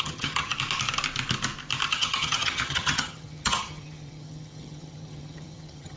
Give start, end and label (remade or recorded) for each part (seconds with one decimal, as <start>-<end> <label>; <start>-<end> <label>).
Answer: 0.0-0.5 remade; 0.5-1.9 recorded; 1.9-6.0 remade